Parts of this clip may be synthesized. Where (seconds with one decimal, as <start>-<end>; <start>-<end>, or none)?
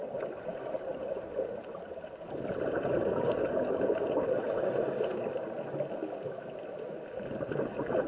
0.9-5.3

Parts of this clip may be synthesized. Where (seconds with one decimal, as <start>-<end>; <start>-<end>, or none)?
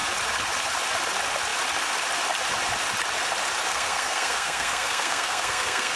3.7-6.0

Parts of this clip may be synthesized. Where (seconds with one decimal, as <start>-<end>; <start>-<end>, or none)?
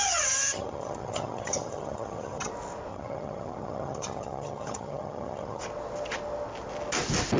0.0-2.5; 2.9-5.6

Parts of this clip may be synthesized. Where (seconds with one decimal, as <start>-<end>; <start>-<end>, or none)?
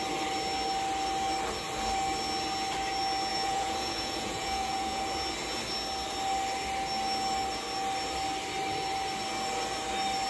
3.3-5.0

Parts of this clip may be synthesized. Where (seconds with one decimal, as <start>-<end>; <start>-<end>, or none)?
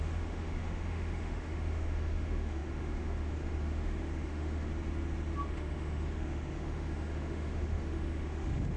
0.0-4.7; 5.5-8.8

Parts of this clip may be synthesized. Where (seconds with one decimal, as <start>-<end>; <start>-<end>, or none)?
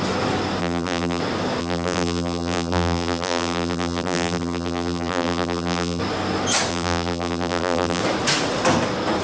0.6-1.2; 1.6-6.0; 6.7-8.0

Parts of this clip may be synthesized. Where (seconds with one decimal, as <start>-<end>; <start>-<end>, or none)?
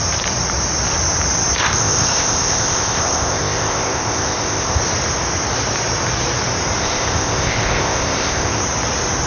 1.6-4.8; 6.8-8.6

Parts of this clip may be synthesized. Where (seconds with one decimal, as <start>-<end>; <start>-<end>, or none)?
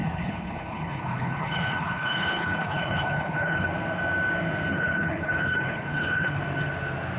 0.0-3.7; 4.7-6.4